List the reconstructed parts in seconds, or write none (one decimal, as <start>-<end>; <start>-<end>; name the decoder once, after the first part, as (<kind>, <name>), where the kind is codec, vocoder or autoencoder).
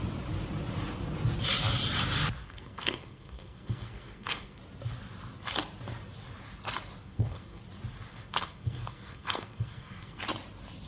2.4-4.6 (codec, SNAC); 7.0-7.6; 8.1-10.2